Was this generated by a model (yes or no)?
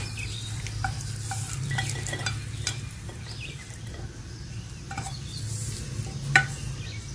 yes